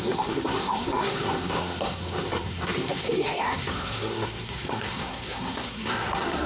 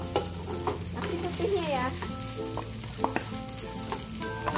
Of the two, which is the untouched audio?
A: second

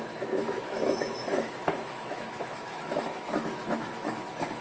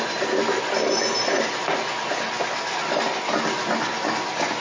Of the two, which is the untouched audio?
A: second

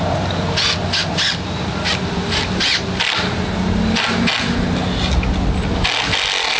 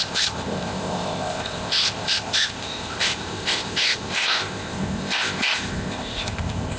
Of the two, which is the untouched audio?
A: first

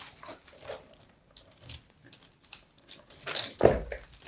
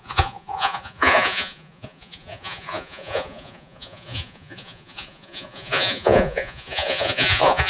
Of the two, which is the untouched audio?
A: first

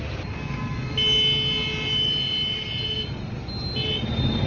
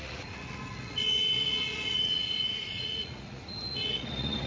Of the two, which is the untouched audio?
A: first